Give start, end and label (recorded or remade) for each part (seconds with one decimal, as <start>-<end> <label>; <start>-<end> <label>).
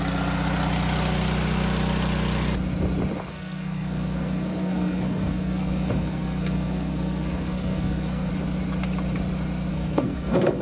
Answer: 0.0-3.3 recorded; 3.3-8.3 remade; 8.3-9.7 recorded; 9.7-10.6 remade